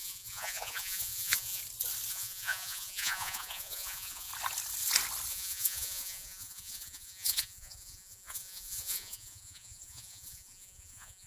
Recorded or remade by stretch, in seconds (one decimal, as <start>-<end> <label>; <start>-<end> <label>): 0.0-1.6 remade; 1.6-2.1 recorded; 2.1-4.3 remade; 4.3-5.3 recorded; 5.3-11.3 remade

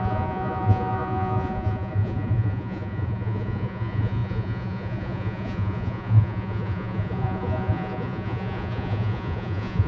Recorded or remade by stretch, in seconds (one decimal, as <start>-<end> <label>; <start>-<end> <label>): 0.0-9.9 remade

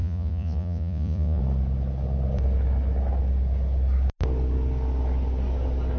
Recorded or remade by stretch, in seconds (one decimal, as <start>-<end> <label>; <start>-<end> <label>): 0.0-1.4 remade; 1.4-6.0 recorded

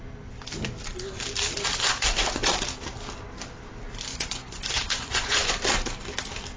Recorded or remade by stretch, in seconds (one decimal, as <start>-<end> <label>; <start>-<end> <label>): 0.0-1.7 recorded; 1.7-2.5 remade; 2.5-4.1 recorded; 4.1-5.5 remade; 5.5-6.6 recorded

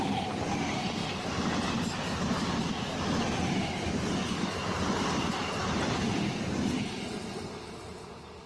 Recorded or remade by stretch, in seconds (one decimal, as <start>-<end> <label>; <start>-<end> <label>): 0.0-8.5 recorded

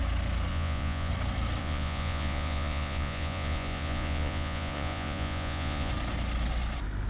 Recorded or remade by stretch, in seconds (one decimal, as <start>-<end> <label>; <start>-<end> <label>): 0.0-0.5 recorded; 0.5-1.1 remade; 1.1-1.6 recorded; 1.6-5.9 remade; 5.9-7.1 recorded

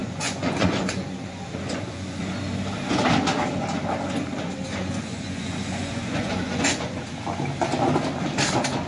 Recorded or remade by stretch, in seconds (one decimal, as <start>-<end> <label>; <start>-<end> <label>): 0.0-2.2 remade; 2.2-4.7 recorded; 4.7-7.0 remade; 7.0-8.9 recorded

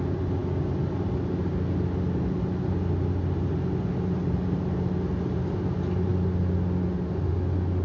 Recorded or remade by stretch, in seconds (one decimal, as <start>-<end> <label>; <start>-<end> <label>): 0.0-7.8 recorded